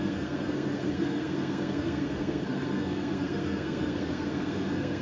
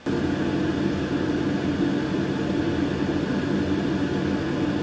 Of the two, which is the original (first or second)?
second